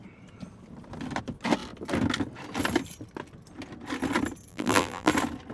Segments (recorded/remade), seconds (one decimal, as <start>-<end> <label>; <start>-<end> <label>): 0.0-4.5 recorded; 4.5-5.1 remade; 5.1-5.5 recorded